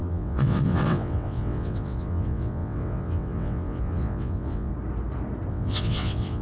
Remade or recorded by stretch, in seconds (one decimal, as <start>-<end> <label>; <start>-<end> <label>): 0.0-4.7 remade; 4.7-5.5 recorded; 5.5-6.4 remade